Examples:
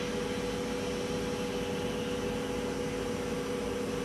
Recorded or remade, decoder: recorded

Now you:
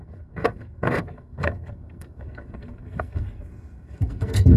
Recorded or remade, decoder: remade, codec, SNAC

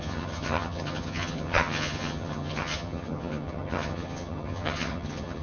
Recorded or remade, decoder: remade, vocoder, HiFi-GAN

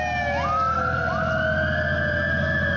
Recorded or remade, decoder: recorded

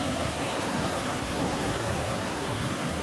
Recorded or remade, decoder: remade, codec, SNAC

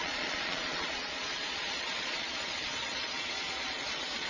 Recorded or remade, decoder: remade, vocoder, Vocos